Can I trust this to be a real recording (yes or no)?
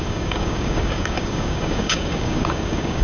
no